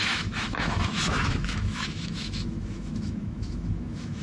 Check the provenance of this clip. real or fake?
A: fake